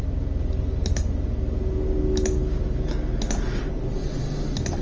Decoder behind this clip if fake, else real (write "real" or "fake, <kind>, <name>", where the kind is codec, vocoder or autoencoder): real